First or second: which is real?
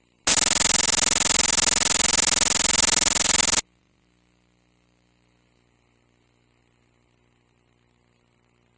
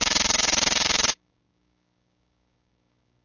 first